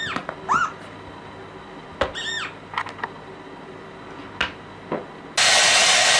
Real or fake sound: real